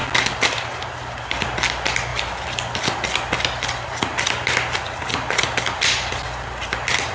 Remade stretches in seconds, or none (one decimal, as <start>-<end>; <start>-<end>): none